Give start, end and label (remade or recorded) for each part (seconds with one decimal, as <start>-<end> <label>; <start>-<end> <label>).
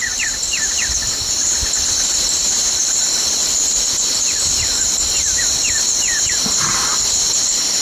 0.0-6.9 remade; 6.9-7.8 recorded